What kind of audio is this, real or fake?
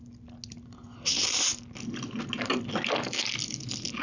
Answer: real